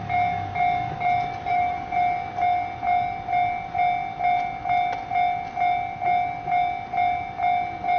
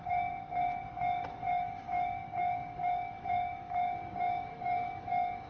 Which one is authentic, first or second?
first